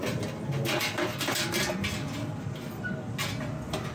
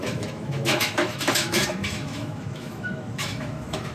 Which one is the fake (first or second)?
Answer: second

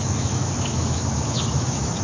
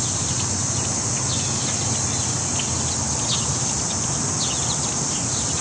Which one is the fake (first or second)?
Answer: first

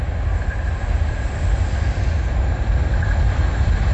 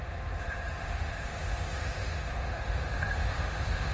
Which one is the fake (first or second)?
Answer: second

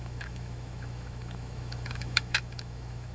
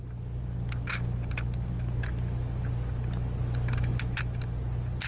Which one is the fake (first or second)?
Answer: first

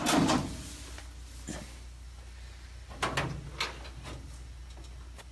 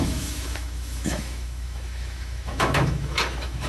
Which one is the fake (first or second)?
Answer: second